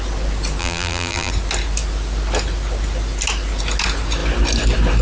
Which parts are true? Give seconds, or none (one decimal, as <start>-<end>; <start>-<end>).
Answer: 0.0-0.6; 1.3-5.0